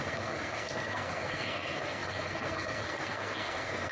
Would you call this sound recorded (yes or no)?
no